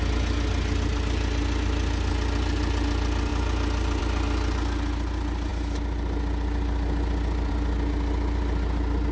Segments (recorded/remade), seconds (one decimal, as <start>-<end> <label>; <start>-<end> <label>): 0.0-9.1 recorded